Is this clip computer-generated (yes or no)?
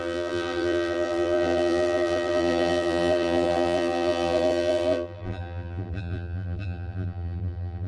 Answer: yes